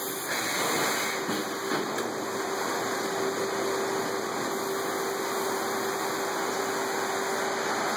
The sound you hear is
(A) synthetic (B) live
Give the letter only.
B